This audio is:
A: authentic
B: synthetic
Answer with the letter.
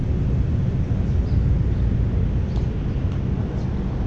A